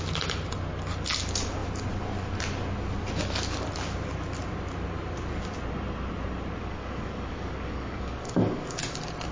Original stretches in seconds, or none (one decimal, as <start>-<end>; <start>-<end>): 0.0-6.6; 8.9-9.3